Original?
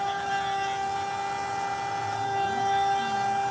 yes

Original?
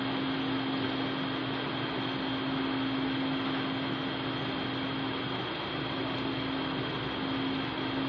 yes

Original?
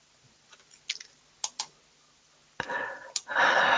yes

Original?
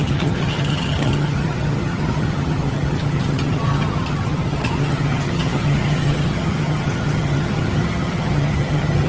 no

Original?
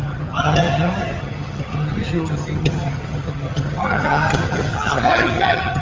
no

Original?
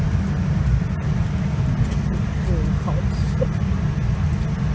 yes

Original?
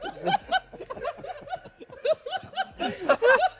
yes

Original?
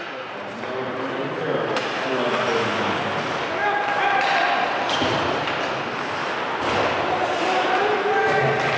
yes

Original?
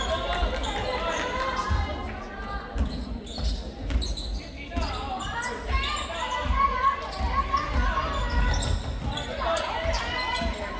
yes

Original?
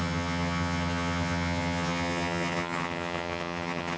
no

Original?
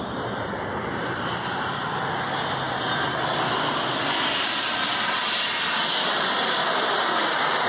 yes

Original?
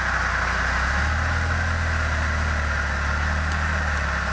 yes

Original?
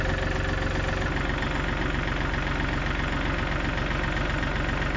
yes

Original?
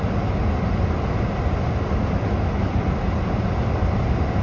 yes